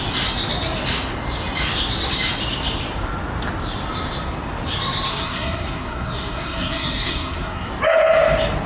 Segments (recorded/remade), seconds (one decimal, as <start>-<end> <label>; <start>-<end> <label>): 0.0-5.1 recorded; 5.1-7.7 remade; 7.7-8.7 recorded